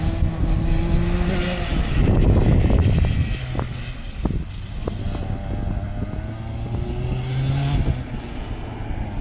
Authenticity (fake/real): real